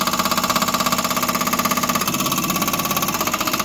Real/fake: real